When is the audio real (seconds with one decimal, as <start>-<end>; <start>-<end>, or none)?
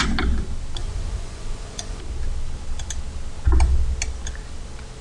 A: 0.0-0.8; 2.0-5.0